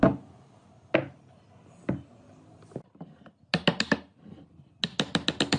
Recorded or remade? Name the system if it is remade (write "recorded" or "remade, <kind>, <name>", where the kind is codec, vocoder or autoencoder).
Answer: recorded